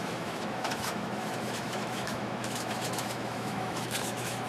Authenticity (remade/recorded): remade